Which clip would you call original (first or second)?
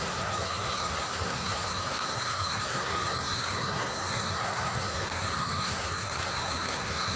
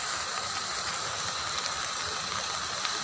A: second